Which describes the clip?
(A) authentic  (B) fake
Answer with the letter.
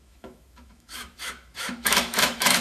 B